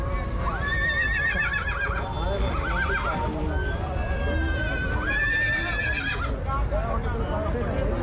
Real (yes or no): yes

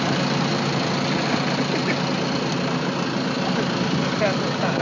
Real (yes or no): yes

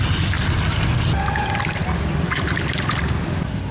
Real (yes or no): yes